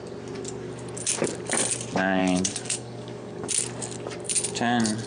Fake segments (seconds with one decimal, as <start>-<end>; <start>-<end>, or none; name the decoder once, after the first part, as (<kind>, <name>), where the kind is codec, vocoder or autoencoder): 2.2-3.5 (codec, DAC)